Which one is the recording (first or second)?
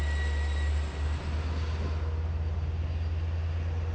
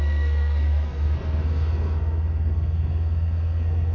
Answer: first